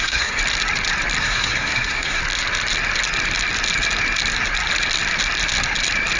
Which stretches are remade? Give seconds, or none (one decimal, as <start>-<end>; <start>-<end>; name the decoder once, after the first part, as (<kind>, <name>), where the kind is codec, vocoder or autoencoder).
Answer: 0.0-0.4 (codec, SNAC); 1.2-2.2